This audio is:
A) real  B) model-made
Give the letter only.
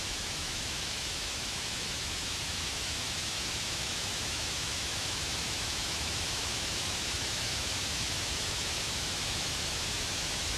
B